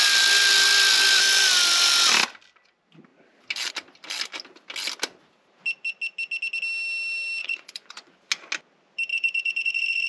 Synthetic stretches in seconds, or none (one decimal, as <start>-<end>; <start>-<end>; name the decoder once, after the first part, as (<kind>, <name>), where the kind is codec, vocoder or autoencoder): 7.4-8.2 (vocoder, Vocos); 9.1-10.1

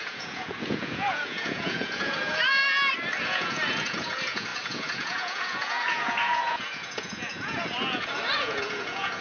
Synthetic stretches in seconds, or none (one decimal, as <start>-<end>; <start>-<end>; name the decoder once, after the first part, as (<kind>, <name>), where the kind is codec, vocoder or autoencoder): 0.0-2.6 (vocoder, Vocos); 3.2-9.2

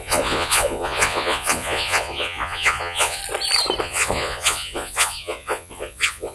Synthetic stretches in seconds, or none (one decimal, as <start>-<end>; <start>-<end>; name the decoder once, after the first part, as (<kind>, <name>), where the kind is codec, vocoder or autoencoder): 0.0-3.2 (vocoder, Vocos); 3.8-6.3

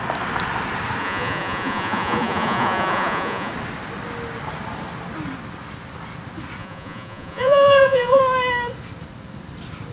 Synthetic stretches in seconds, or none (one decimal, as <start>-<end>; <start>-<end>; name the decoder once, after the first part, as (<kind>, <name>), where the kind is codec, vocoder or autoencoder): 1.0-3.5 (vocoder, Vocos); 6.6-8.2

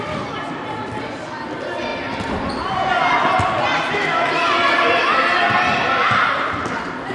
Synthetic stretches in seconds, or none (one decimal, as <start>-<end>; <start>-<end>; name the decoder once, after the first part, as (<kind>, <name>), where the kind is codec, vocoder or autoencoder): none

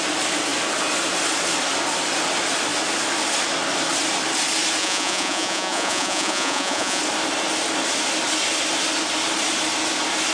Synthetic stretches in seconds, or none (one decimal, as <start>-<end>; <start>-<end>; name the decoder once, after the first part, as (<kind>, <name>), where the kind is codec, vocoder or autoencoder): 4.8-7.0 (vocoder, Vocos)